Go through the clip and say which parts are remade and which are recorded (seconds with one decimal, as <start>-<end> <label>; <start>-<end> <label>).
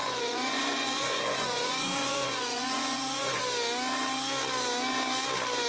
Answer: 0.0-3.4 remade; 3.4-5.7 recorded